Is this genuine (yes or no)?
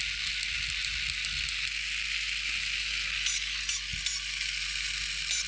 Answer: yes